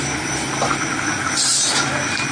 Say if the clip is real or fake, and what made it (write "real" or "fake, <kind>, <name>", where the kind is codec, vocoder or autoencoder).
real